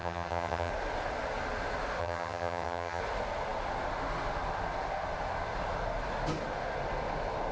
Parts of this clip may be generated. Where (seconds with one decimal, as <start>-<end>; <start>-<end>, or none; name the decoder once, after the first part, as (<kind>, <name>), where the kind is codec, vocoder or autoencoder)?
0.0-0.7 (vocoder, HiFi-GAN); 2.0-3.0